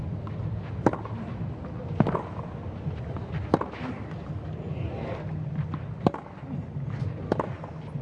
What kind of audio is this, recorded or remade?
recorded